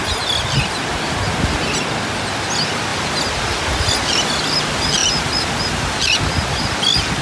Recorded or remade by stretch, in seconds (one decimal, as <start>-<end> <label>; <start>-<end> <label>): 0.0-7.2 recorded